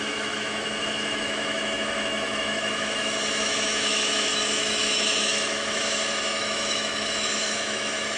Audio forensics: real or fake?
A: fake